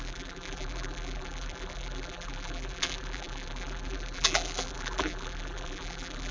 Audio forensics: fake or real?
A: fake